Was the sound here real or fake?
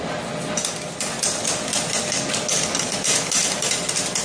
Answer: real